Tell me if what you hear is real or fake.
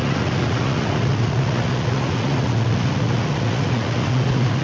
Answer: fake